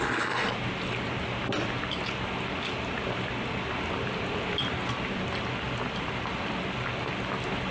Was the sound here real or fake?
real